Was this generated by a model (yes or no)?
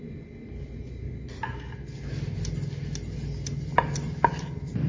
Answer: no